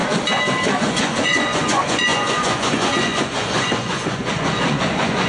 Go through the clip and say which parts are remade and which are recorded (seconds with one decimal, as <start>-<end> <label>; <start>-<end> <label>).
0.0-0.8 recorded; 0.8-5.3 remade